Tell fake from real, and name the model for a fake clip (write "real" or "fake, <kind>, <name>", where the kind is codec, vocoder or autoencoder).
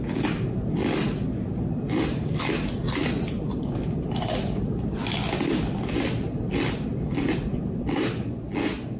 real